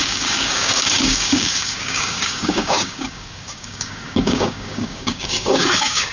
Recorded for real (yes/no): no